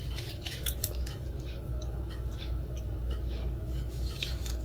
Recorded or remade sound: remade